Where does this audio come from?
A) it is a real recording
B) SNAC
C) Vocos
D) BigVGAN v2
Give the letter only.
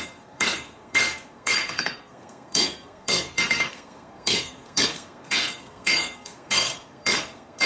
B